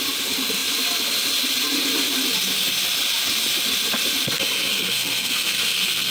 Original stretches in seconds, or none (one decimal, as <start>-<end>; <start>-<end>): 0.0-4.7